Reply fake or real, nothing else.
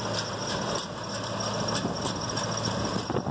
real